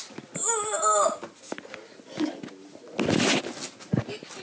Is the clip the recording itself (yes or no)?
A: yes